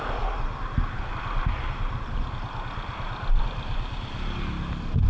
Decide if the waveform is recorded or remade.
recorded